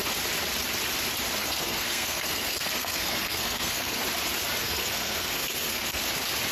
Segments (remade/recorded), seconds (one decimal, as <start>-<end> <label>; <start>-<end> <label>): 0.0-1.4 recorded; 1.4-4.0 remade; 4.0-4.6 recorded; 4.6-6.0 remade; 6.0-6.5 recorded